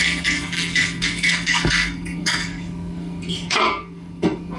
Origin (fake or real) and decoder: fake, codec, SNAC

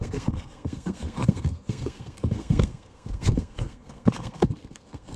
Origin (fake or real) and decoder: fake, codec, SNAC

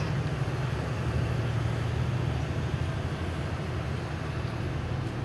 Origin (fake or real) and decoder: real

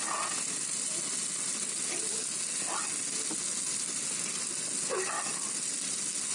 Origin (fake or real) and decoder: real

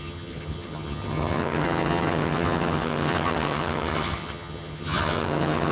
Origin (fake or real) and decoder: fake, vocoder, HiFi-GAN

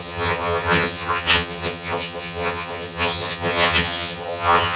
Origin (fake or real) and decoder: fake, vocoder, HiFi-GAN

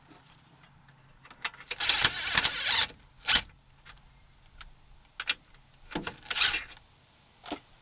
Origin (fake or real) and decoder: real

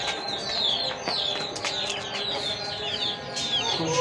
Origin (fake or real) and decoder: real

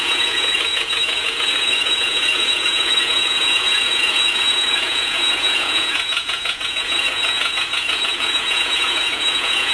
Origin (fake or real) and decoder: fake, vocoder, Vocos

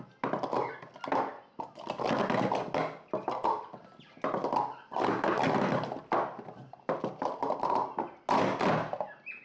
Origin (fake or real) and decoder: real